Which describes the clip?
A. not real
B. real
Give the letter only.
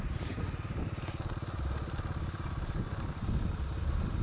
B